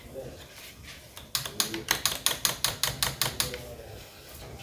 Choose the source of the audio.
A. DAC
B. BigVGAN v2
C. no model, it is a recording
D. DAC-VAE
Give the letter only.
C